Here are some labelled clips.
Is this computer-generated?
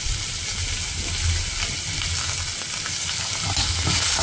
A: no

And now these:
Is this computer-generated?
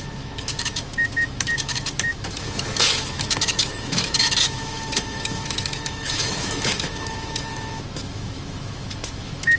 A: yes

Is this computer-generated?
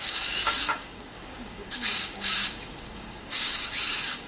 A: yes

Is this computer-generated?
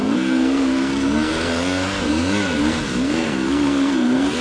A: yes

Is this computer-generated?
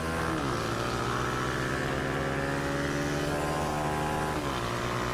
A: no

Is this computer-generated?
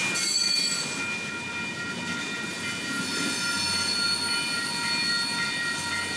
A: no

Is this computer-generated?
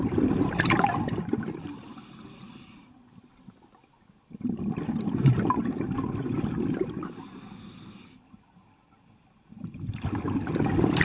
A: no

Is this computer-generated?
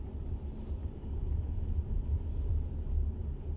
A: no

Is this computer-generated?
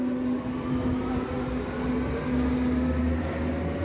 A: no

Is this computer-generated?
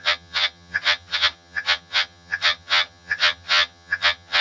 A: yes